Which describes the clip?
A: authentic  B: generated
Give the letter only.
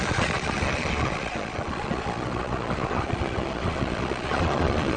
B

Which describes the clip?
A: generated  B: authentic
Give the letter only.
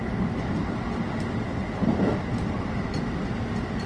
B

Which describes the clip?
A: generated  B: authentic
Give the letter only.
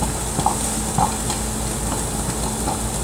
B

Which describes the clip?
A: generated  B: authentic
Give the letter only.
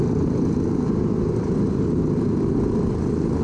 B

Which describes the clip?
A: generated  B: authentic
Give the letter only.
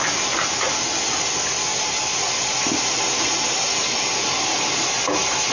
B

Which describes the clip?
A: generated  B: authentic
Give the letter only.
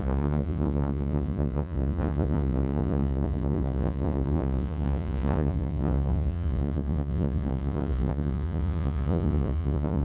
A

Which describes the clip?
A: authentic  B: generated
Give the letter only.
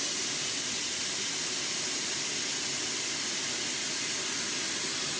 A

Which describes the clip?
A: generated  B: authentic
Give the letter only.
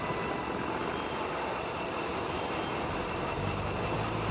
B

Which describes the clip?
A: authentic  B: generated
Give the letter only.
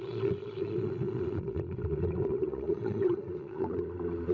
B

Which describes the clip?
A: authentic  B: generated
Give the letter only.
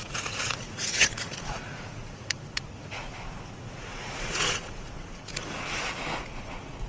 B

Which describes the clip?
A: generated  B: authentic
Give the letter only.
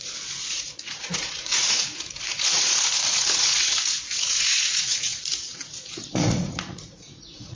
A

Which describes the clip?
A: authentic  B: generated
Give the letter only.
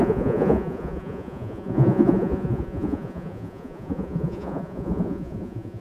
B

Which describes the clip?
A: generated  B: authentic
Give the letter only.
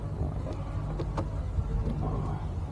B